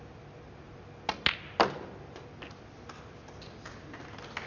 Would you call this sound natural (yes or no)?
yes